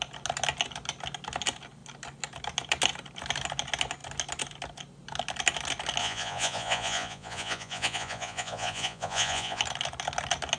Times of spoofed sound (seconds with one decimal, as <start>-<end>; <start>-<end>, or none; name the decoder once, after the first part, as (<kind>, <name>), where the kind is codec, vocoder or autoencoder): 6.0-9.6 (vocoder, Vocos)